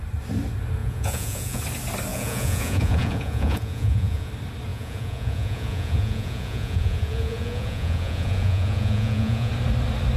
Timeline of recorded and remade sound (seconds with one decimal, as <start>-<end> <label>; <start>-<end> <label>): 0.0-0.8 recorded; 0.8-1.6 remade; 1.6-2.1 recorded; 2.1-4.3 remade; 4.3-4.7 recorded; 4.7-9.5 remade; 9.5-10.2 recorded